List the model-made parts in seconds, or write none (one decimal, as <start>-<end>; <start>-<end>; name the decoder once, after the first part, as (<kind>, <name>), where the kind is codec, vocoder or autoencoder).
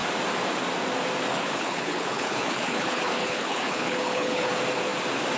1.3-4.5 (codec, HILCodec)